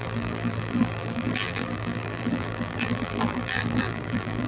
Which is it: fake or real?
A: fake